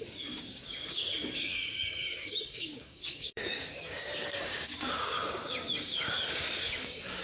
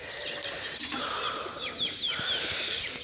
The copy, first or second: first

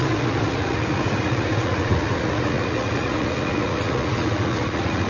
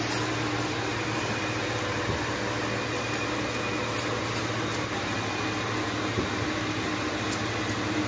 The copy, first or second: first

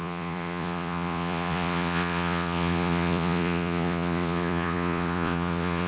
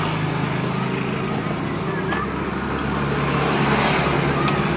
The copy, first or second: first